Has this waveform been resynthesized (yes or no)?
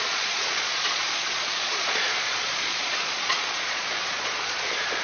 yes